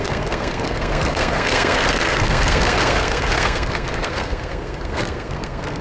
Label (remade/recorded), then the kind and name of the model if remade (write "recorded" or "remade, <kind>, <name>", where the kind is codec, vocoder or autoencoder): remade, codec, SNAC